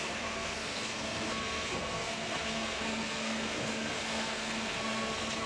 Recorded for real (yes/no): no